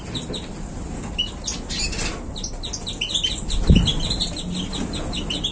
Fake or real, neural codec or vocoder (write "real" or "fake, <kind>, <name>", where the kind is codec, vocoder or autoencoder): real